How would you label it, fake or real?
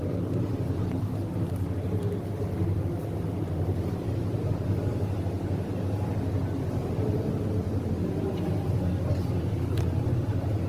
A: real